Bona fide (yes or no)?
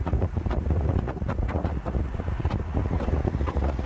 no